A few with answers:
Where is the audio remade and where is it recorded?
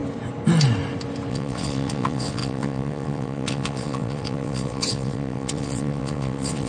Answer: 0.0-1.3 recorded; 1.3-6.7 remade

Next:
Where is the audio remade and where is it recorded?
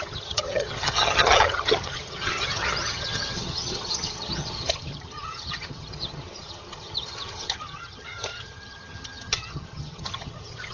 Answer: 0.0-10.7 remade